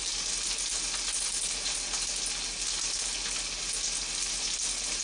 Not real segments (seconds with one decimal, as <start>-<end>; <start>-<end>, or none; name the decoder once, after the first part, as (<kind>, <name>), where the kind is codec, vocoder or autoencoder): none